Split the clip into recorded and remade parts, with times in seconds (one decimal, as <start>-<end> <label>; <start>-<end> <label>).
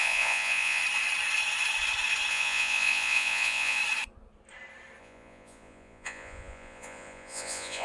0.0-0.8 remade; 0.8-2.3 recorded; 2.3-3.8 remade; 3.8-5.0 recorded; 5.0-7.8 remade